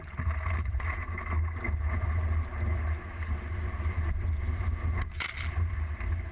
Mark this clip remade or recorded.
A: recorded